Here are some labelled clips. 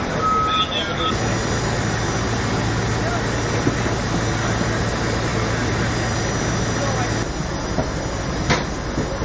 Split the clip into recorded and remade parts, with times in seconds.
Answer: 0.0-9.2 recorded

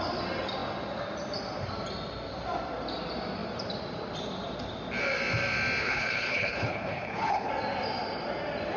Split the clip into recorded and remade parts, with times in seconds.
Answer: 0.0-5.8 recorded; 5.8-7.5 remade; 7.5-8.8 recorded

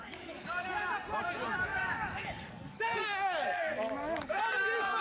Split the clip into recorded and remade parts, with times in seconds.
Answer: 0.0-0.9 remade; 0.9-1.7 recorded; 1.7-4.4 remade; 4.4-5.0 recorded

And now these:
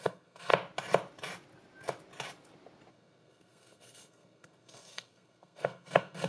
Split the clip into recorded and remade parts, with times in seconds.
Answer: 0.0-0.5 remade; 0.5-2.9 recorded; 2.9-6.3 remade

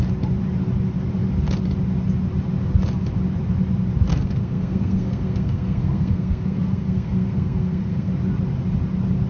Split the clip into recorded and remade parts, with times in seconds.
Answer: 0.0-4.1 recorded; 4.1-8.1 remade; 8.1-9.3 recorded

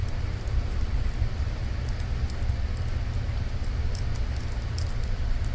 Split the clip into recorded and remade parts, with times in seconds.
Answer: 0.0-1.6 remade; 1.6-4.9 recorded; 4.9-5.5 remade

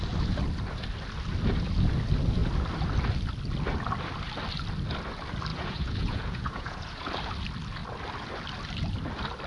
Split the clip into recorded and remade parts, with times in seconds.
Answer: 0.0-5.5 recorded; 5.5-7.1 remade; 7.1-9.5 recorded

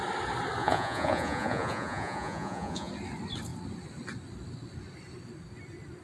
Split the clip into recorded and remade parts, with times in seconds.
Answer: 0.0-0.6 recorded; 0.6-2.9 remade; 2.9-6.0 recorded